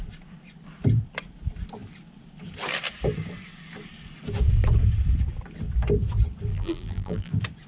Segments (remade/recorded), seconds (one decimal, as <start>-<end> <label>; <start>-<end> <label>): 0.0-6.5 recorded; 6.5-7.3 remade; 7.3-7.7 recorded